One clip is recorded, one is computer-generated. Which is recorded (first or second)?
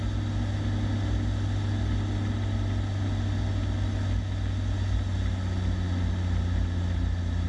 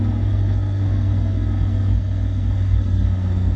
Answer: first